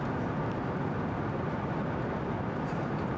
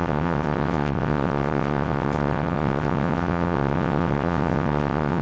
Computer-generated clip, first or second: second